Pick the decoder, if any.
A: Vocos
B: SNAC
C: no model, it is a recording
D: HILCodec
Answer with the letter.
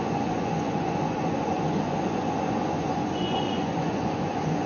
A